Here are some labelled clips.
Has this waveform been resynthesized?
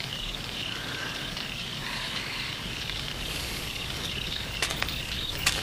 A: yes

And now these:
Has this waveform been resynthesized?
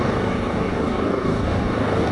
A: yes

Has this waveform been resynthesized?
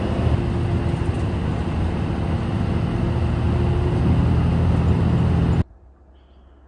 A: no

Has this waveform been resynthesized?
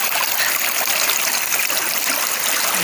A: no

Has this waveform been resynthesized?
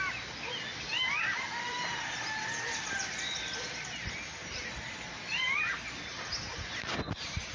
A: no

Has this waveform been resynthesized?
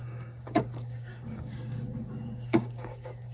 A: yes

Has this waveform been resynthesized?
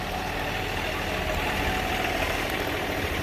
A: no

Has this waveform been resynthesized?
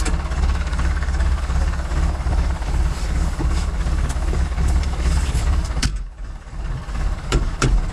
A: yes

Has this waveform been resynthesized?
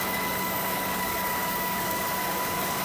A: yes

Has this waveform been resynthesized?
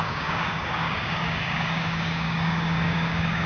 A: yes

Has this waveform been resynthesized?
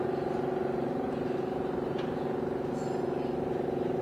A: no